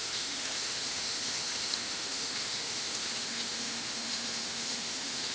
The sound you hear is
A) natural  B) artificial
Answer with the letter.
B